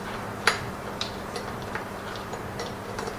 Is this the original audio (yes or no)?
no